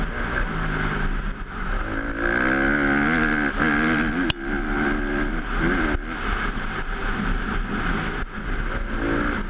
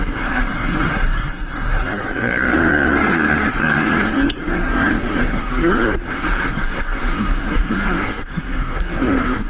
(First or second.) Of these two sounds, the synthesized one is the second